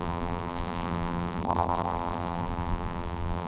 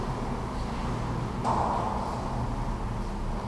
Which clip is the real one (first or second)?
second